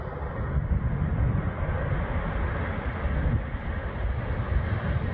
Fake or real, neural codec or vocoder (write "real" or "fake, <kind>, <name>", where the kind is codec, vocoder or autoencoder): fake, vocoder, BigVGAN v2